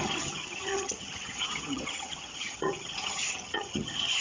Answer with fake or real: fake